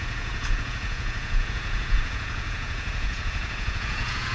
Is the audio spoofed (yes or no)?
yes